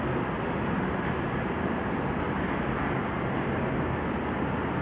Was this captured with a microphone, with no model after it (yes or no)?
yes